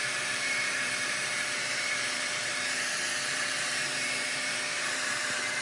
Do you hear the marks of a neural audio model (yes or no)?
yes